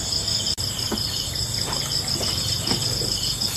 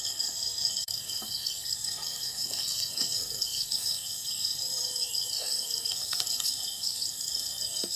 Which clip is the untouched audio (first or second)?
first